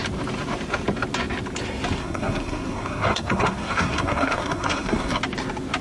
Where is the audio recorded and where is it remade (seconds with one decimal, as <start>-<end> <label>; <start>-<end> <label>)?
0.0-2.0 recorded; 2.0-5.2 remade; 5.2-5.8 recorded